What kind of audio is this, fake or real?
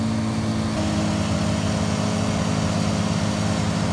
real